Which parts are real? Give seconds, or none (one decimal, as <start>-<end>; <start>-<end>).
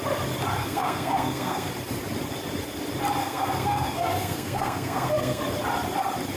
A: 0.0-0.6; 1.7-3.2; 5.4-6.4